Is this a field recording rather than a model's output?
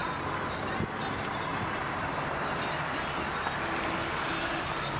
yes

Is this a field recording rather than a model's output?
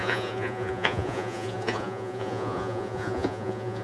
no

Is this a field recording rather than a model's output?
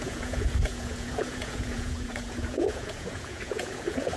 no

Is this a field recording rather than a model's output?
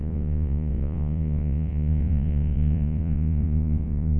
no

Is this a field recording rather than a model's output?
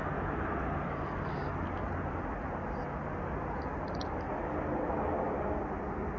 yes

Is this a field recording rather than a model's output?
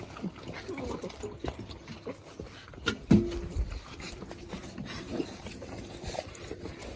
yes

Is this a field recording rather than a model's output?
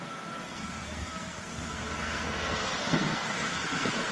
no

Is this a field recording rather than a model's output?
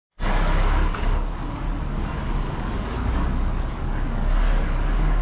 no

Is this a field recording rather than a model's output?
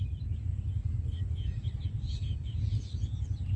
yes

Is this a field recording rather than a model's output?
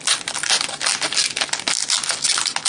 yes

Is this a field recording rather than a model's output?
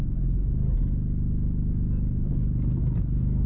yes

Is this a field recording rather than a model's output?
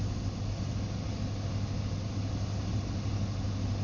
yes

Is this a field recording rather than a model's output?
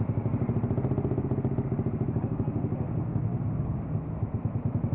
yes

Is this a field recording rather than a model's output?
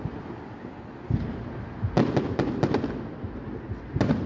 yes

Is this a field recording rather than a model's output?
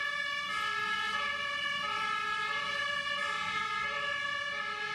yes